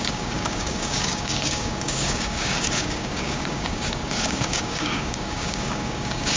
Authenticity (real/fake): fake